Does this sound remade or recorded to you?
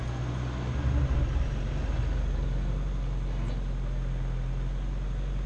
recorded